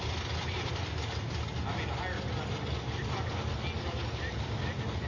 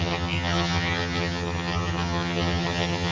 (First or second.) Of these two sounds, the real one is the first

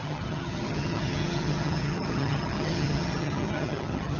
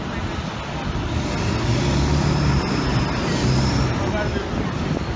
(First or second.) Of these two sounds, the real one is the second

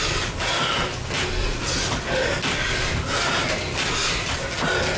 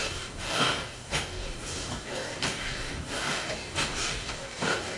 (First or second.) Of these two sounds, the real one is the first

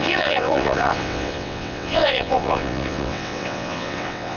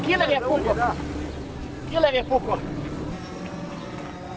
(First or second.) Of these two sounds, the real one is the second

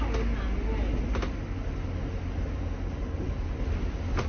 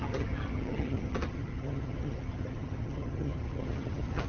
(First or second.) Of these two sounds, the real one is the first